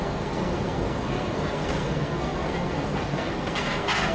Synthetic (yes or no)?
yes